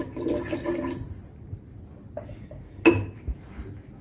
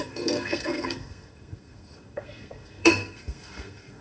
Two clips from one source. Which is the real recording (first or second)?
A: first